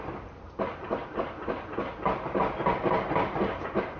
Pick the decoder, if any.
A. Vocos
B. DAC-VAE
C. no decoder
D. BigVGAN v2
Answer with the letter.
C